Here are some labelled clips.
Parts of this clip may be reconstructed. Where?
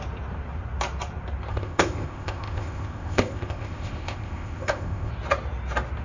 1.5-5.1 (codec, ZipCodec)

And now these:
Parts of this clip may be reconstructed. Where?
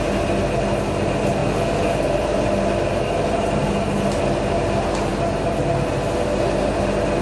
none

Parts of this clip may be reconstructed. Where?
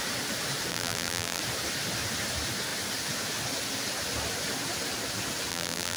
0.7-1.4 (vocoder, BigVGAN v2); 5.5-6.0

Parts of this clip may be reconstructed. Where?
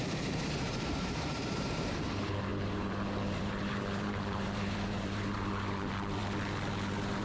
0.0-6.2 (vocoder, BigVGAN v2)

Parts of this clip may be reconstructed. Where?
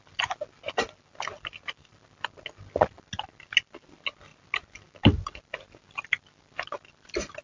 none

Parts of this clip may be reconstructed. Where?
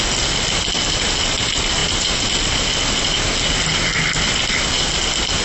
1.8-3.0 (vocoder, BigVGAN v2); 3.9-4.6